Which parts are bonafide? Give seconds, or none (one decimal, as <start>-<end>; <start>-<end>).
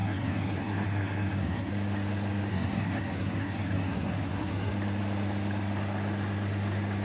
1.7-2.5; 4.7-7.0